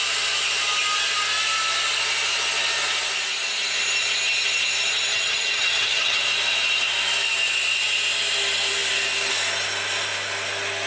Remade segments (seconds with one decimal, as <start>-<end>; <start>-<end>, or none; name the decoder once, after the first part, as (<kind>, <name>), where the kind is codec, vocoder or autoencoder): 5.1-6.2 (vocoder, HiFi-GAN)